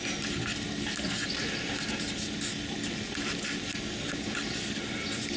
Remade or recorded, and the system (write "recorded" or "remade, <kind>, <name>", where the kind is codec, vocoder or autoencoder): recorded